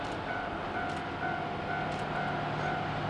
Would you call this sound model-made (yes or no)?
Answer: no